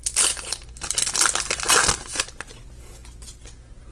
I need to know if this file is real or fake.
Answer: real